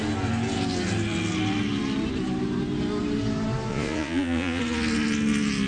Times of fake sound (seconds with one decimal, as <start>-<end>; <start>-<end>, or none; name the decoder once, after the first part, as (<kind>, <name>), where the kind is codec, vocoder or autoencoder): 3.7-4.6 (vocoder, Vocos)